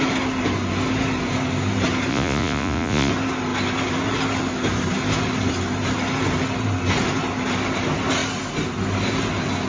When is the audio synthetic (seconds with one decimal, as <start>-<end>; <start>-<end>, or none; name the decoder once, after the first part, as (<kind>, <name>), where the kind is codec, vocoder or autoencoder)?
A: 2.1-3.1 (vocoder, Vocos)